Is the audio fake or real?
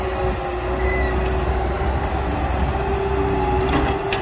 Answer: real